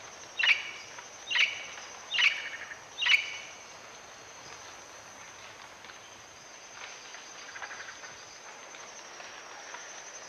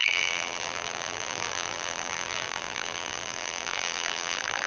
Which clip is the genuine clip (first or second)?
first